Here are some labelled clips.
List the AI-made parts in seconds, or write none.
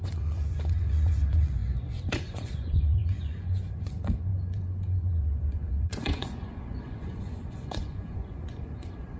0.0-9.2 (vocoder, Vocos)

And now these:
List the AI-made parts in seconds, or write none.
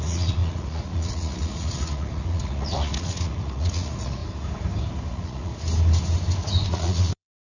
0.0-4.2 (vocoder, Vocos); 5.1-5.5; 6.7-7.4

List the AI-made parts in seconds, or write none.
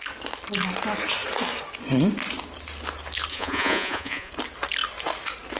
3.3-4.3 (vocoder, Vocos)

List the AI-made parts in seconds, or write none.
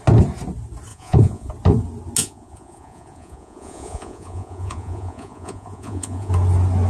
0.9-1.5 (vocoder, Vocos); 2.2-6.3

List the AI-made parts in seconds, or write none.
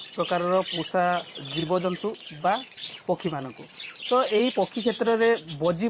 1.6-4.5 (vocoder, Vocos)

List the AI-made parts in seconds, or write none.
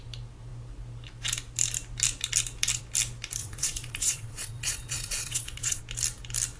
3.4-5.8 (vocoder, Vocos)